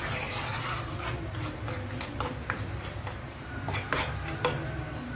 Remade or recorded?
recorded